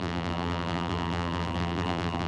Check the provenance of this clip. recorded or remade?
remade